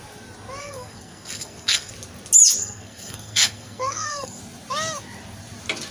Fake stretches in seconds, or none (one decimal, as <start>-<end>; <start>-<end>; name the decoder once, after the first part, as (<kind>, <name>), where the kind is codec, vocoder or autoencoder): 0.6-1.9 (codec, SNAC); 2.6-4.4